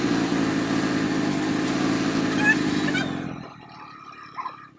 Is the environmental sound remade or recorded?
recorded